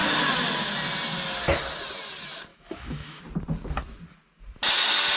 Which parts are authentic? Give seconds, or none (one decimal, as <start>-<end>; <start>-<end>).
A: 0.0-2.5; 3.2-5.2